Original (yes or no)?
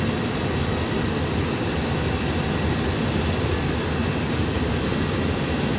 yes